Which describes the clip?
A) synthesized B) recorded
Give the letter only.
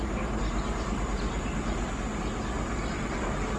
B